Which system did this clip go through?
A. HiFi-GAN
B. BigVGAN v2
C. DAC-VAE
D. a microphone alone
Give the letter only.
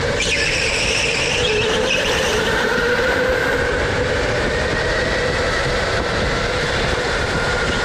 B